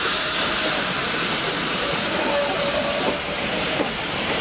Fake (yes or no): yes